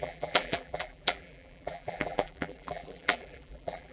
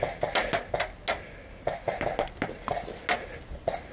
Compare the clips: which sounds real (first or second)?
second